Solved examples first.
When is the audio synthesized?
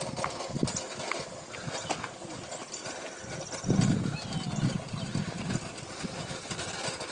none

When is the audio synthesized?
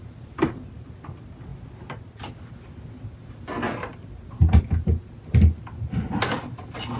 none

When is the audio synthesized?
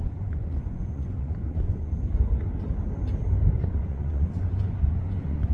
0.0-1.9 (vocoder, Vocos); 3.5-5.5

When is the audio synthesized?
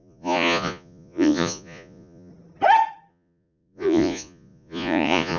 0.0-2.3 (vocoder, Vocos); 3.1-5.4